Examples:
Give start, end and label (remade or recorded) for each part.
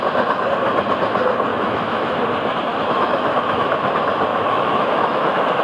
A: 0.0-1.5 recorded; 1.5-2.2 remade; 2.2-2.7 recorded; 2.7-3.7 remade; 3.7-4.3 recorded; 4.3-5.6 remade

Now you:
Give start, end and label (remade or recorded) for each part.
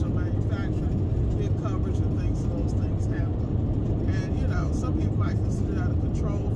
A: 0.0-6.6 recorded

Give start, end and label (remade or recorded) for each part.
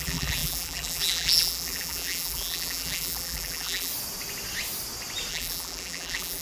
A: 0.0-3.9 remade; 3.9-5.3 recorded; 5.3-6.4 remade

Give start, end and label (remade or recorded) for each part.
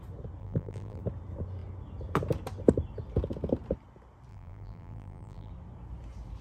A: 0.0-0.4 recorded; 0.4-1.0 remade; 1.0-4.3 recorded; 4.3-5.5 remade; 5.5-6.4 recorded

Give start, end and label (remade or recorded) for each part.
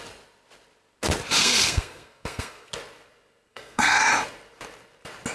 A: 0.0-1.4 recorded; 1.4-2.7 remade; 2.7-3.5 recorded; 3.5-4.1 remade; 4.1-5.3 recorded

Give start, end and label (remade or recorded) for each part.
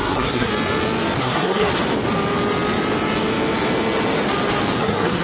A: 0.0-0.5 remade; 0.5-1.2 recorded; 1.2-1.7 remade; 1.7-4.8 recorded; 4.8-5.2 remade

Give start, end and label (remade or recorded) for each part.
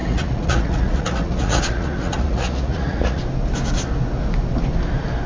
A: 0.0-3.2 remade; 3.2-5.3 recorded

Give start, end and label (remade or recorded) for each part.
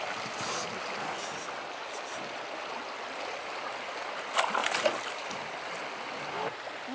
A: 0.0-6.9 recorded